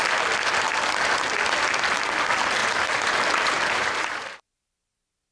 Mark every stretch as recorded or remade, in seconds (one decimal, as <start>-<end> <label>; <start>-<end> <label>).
0.0-2.6 recorded; 2.6-4.4 remade; 4.4-5.3 recorded